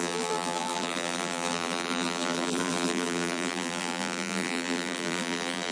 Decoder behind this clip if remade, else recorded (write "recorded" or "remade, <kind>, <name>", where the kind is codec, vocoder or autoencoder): remade, vocoder, BigVGAN v2